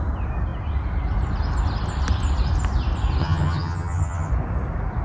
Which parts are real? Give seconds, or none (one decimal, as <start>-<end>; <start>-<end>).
0.0-3.2; 4.3-5.0